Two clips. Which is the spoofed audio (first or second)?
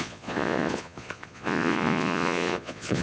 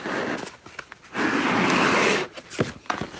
first